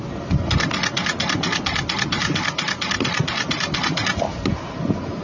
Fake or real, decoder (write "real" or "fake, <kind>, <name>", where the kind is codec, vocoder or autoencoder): real